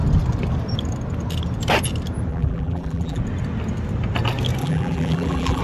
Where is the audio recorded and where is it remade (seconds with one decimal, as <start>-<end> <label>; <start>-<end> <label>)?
0.0-2.3 recorded; 2.3-3.2 remade; 3.2-4.6 recorded; 4.6-5.6 remade